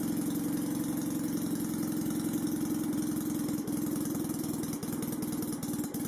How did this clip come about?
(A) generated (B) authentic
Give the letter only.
B